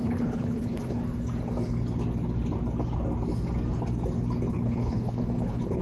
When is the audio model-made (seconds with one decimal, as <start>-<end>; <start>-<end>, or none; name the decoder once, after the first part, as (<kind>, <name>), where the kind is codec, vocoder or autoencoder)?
0.0-1.0 (codec, HILCodec); 4.5-5.8